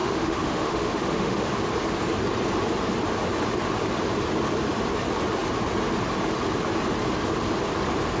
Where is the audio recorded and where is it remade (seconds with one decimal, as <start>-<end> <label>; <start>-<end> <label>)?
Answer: 0.0-1.5 remade; 1.5-8.2 recorded